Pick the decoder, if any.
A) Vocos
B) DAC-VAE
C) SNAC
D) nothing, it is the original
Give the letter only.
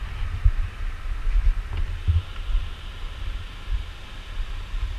D